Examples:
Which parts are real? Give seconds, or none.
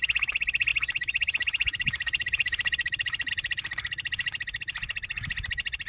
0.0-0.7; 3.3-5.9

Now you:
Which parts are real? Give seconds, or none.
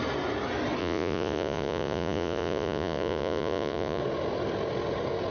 0.0-0.8; 4.0-5.3